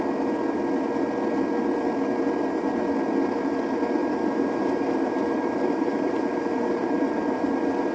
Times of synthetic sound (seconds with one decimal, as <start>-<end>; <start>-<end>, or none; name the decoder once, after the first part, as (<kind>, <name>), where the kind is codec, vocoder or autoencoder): 4.0-7.9 (vocoder, BigVGAN v2)